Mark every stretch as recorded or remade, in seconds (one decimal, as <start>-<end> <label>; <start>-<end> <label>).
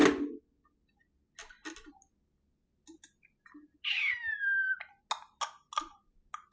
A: 0.0-6.5 recorded